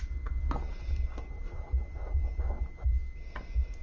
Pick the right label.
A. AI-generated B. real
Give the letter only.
B